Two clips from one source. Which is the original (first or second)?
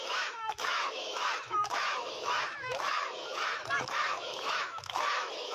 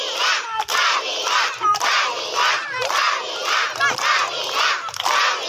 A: second